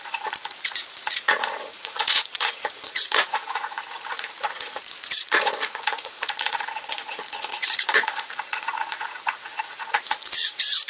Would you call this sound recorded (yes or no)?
no